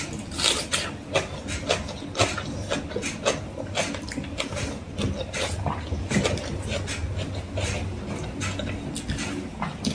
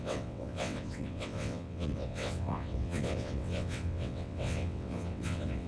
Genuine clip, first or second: first